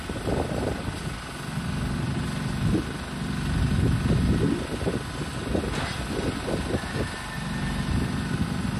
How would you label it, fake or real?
real